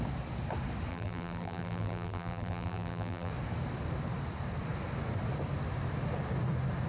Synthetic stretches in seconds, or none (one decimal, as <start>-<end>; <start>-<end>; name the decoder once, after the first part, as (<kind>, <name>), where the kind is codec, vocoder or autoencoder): 0.9-3.3 (vocoder, BigVGAN v2)